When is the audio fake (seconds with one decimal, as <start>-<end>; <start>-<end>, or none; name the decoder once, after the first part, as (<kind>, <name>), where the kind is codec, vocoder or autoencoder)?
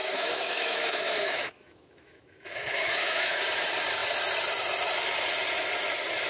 0.0-3.4 (autoencoder, DAC-VAE)